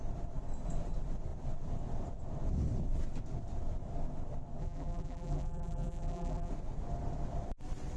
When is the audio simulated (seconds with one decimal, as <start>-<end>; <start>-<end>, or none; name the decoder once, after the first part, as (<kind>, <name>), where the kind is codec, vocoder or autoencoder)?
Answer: 4.6-6.5 (vocoder, BigVGAN v2)